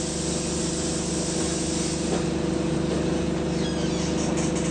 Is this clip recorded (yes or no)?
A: yes